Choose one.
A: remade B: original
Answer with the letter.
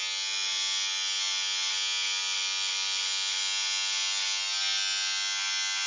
B